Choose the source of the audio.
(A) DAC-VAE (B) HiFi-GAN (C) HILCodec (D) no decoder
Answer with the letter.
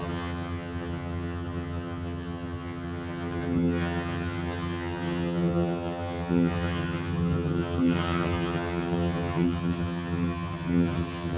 B